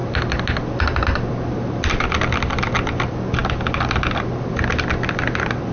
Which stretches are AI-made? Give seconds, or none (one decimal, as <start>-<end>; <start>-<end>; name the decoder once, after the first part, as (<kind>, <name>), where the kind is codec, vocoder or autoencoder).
none